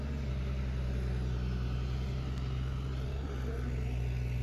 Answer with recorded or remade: recorded